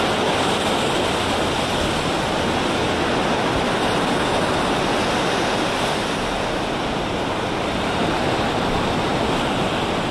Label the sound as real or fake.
real